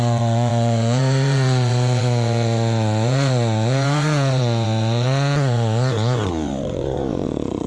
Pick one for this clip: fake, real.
fake